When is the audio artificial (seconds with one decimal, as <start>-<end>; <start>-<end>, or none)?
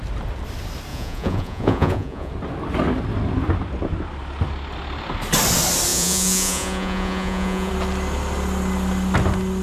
0.9-2.3; 5.9-7.7